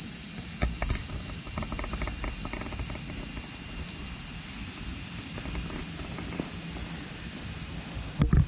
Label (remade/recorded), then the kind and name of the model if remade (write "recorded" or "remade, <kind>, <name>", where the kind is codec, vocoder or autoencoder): recorded